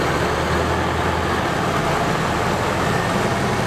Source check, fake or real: real